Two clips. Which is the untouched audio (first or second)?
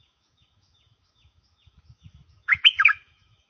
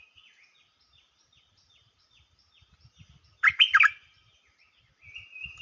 second